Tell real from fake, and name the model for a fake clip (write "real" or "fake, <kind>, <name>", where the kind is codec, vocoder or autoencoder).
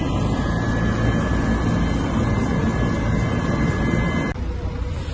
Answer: real